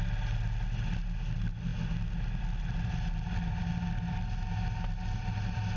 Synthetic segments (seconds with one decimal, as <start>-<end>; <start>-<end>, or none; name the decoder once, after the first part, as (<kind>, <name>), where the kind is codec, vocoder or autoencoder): none